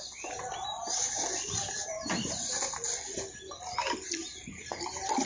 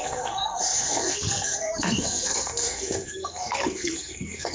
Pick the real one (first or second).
first